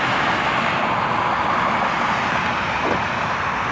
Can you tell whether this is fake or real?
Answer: real